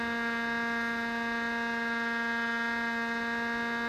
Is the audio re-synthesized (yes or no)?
no